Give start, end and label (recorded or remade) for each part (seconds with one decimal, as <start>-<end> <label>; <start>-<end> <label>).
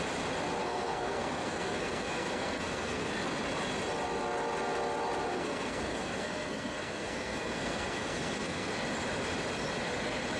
0.0-0.6 recorded; 0.6-3.1 remade; 3.1-5.3 recorded; 5.3-8.7 remade; 8.7-10.4 recorded